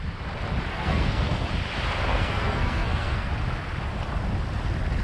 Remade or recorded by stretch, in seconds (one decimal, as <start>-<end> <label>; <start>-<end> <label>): 0.0-0.7 recorded; 0.7-1.5 remade; 1.5-2.1 recorded; 2.1-3.3 remade; 3.3-5.0 recorded